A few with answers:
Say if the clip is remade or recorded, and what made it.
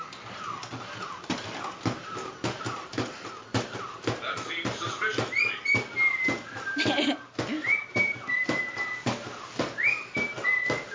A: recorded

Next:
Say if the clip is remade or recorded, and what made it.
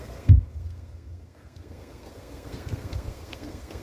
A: remade, codec, SNAC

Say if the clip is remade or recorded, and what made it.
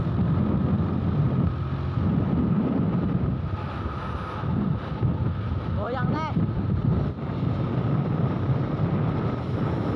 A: recorded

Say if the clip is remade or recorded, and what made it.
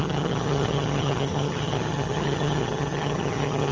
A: remade, vocoder, HiFi-GAN